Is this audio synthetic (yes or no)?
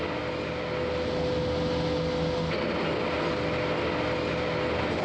no